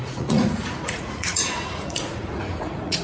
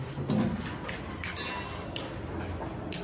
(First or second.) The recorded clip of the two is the second